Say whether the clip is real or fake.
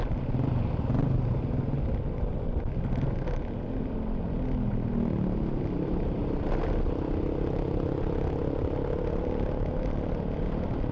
real